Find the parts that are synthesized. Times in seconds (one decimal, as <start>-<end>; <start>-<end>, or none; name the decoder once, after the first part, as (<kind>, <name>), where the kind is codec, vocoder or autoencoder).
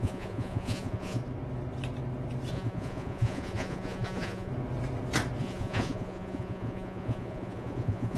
0.0-1.2 (vocoder, Vocos); 2.5-4.5; 5.4-8.2